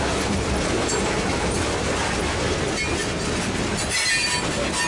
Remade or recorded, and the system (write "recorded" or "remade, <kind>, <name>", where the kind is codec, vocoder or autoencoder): recorded